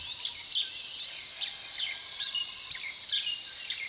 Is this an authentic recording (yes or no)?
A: yes